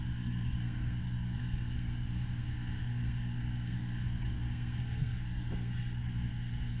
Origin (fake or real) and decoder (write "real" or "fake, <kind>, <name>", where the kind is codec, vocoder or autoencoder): fake, codec, SNAC